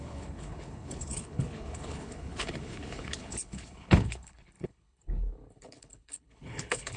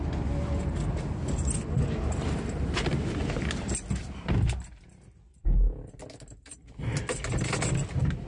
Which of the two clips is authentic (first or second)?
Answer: second